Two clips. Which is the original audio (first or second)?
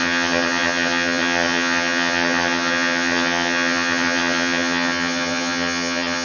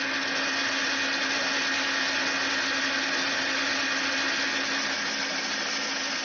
second